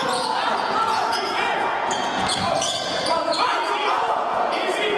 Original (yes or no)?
no